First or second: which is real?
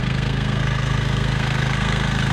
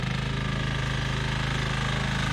second